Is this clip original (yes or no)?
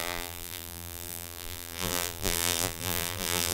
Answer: no